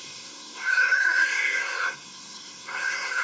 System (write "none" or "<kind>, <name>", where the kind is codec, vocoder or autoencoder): codec, SNAC